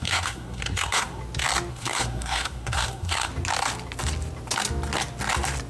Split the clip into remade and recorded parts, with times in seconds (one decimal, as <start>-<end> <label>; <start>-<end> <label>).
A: 0.0-1.2 remade; 1.2-1.7 recorded; 1.7-3.3 remade; 3.3-5.7 recorded

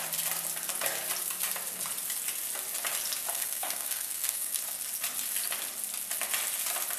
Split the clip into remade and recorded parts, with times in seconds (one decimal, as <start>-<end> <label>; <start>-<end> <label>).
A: 0.0-3.3 recorded; 3.3-4.6 remade; 4.6-7.0 recorded

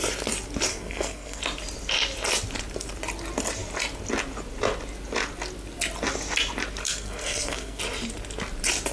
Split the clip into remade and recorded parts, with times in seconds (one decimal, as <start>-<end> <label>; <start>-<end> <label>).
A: 0.0-0.7 recorded; 0.7-1.4 remade; 1.4-6.8 recorded; 6.8-7.8 remade; 7.8-8.9 recorded

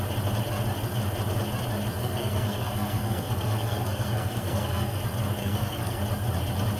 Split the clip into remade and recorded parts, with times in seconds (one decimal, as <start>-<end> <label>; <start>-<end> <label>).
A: 0.0-2.0 recorded; 2.0-5.0 remade; 5.0-5.4 recorded; 5.4-6.0 remade; 6.0-6.8 recorded

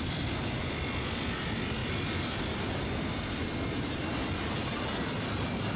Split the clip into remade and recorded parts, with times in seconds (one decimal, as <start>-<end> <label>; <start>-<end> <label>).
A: 0.0-5.8 recorded